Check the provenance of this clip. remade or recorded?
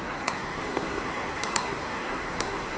remade